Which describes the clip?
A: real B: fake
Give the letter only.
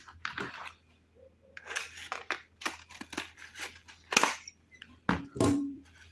B